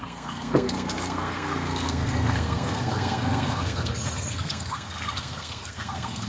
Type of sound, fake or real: fake